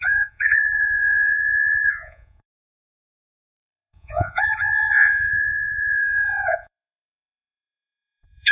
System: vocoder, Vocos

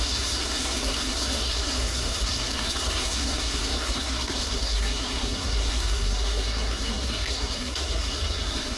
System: codec, SNAC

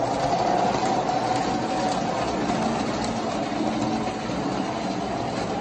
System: none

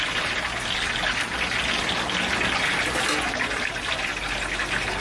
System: none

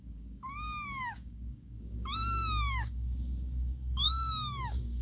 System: codec, DAC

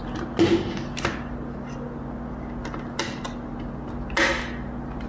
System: none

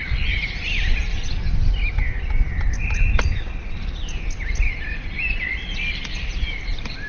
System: none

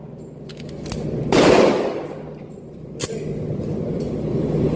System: none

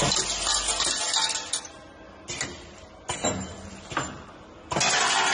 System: none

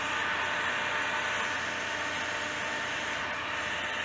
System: none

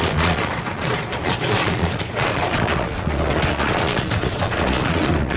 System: vocoder, Vocos